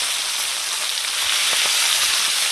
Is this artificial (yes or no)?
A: no